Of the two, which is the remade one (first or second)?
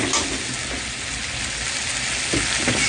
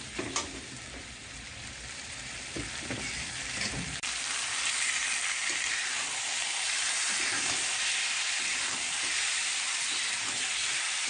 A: second